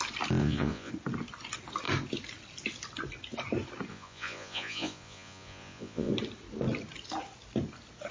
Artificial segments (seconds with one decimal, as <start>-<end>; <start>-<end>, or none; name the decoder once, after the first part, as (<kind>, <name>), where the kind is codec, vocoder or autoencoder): 0.4-0.9 (vocoder, Vocos); 3.9-6.1